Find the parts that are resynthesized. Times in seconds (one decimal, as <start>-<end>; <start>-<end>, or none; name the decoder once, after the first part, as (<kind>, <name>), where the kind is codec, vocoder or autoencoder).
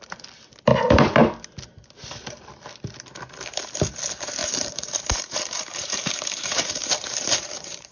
4.4-7.9 (vocoder, BigVGAN v2)